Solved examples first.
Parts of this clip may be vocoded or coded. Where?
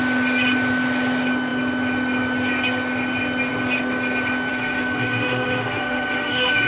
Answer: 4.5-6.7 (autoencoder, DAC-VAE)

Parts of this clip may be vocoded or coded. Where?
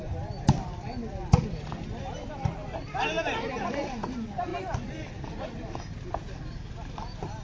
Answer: none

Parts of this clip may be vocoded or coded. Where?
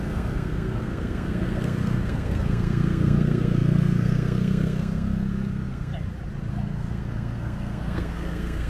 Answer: 0.0-5.9 (codec, SNAC); 6.5-8.7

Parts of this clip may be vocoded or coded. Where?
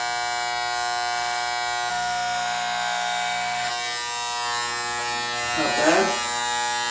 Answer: 1.9-3.7 (autoencoder, DAC-VAE)